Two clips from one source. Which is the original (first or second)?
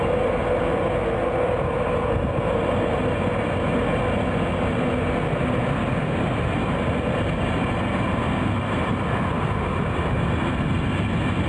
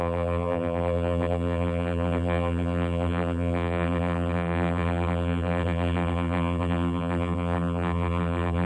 first